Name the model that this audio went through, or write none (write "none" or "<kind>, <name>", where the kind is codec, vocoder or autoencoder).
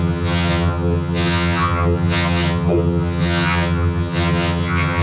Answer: vocoder, HiFi-GAN